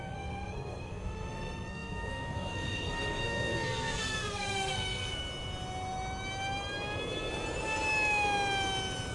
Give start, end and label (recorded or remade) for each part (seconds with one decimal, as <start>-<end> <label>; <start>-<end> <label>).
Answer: 0.0-5.2 remade; 5.2-9.1 recorded